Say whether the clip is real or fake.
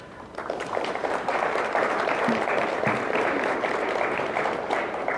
fake